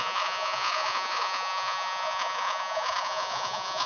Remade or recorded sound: remade